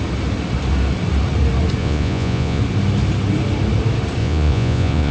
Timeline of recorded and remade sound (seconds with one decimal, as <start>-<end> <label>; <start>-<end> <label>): 0.0-1.8 recorded; 1.8-2.6 remade; 2.6-4.2 recorded; 4.2-5.1 remade

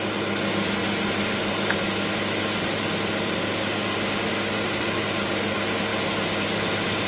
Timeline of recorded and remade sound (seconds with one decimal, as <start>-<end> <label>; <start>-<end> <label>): 0.0-7.1 recorded

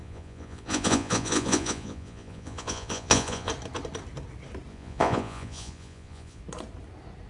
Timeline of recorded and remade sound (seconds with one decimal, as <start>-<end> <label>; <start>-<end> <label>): 0.0-3.5 remade; 3.5-4.7 recorded; 4.7-6.4 remade; 6.4-7.3 recorded

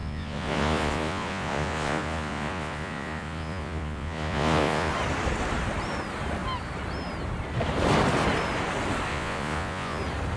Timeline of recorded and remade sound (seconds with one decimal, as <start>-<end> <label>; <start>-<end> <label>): 0.0-4.9 remade; 4.9-9.1 recorded; 9.1-10.0 remade; 10.0-10.4 recorded

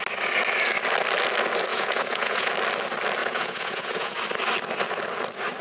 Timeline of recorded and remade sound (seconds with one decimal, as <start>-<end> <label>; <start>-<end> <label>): 0.0-1.7 recorded; 1.7-2.5 remade; 2.5-3.2 recorded; 3.2-4.2 remade; 4.2-5.6 recorded

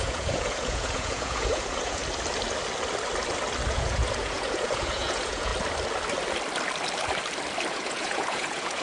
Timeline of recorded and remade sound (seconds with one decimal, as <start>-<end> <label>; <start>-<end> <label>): 0.0-2.0 remade; 2.0-3.7 recorded; 3.7-5.5 remade; 5.5-7.7 recorded; 7.7-8.8 remade

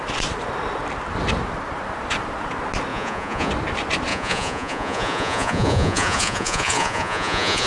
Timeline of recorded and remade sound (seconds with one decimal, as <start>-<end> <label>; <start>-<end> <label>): 0.0-2.9 recorded; 2.9-3.5 remade; 3.5-4.1 recorded; 4.1-7.7 remade

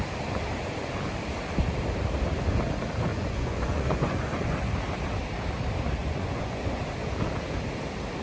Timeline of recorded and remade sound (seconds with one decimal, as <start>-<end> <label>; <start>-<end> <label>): 0.0-3.1 recorded; 3.1-4.7 remade; 4.7-6.0 recorded; 6.0-6.8 remade; 6.8-8.2 recorded